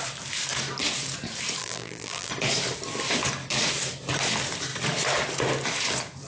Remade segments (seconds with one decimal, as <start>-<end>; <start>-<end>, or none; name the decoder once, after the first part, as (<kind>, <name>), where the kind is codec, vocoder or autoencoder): 1.6-2.3 (vocoder, BigVGAN v2)